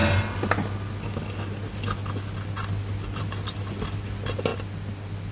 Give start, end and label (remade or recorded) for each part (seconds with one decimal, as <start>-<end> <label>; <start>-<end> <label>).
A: 0.0-5.3 recorded